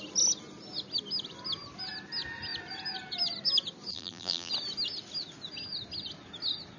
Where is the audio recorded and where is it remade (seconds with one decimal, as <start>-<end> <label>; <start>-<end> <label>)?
0.0-3.9 recorded; 3.9-4.5 remade; 4.5-6.8 recorded